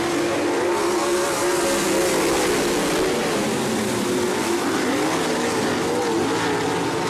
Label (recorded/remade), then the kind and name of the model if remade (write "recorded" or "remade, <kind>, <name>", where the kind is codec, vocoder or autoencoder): recorded